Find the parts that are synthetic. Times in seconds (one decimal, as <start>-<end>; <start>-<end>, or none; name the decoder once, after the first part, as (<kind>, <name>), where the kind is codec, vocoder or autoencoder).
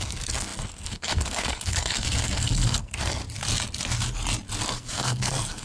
0.0-3.2 (codec, SNAC); 4.7-5.6